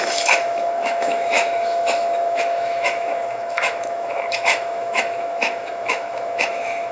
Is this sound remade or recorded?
remade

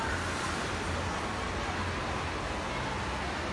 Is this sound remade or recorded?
recorded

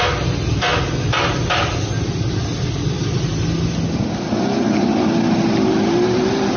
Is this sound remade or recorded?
recorded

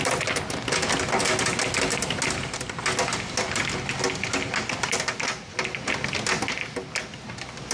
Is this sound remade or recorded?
recorded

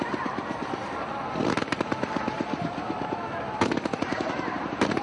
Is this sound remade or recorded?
recorded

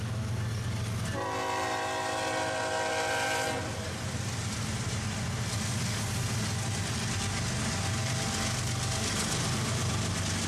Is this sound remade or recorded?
recorded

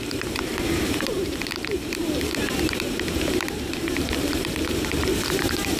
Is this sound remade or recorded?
remade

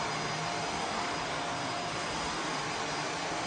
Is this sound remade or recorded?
recorded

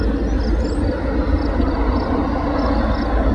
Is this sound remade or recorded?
recorded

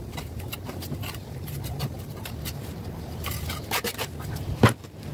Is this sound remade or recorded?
remade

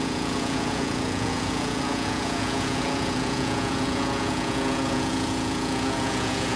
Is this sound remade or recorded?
remade